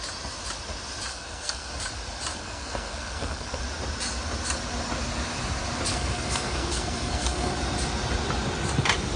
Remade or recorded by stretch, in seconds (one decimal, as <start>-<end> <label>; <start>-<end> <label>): 0.0-1.1 recorded; 1.1-1.7 remade; 1.7-2.3 recorded; 2.3-3.6 remade; 3.6-5.9 recorded; 5.9-7.5 remade; 7.5-9.2 recorded